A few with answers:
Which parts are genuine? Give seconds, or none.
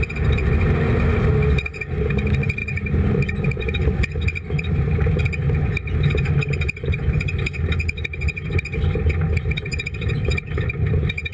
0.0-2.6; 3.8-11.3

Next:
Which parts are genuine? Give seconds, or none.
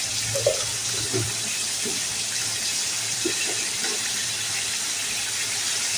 0.0-0.8; 4.4-6.0